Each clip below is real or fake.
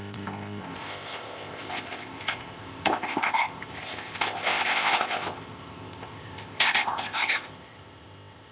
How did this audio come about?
fake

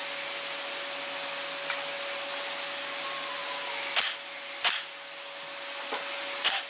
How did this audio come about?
real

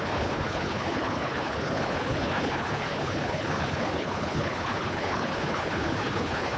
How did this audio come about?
fake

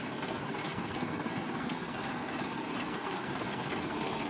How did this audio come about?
fake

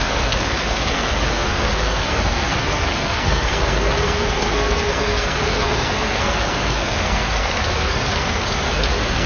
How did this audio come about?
fake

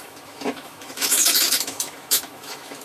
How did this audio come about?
fake